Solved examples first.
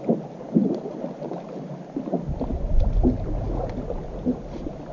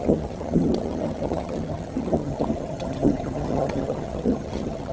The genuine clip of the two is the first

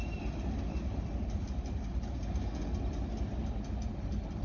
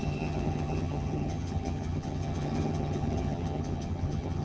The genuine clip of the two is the first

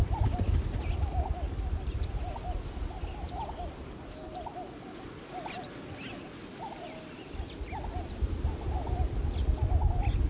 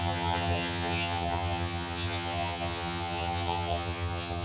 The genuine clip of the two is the first